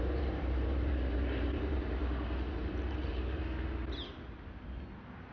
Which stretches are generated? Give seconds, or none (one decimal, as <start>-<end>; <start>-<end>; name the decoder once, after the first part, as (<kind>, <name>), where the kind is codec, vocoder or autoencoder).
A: 0.0-2.0 (vocoder, BigVGAN v2); 2.5-3.4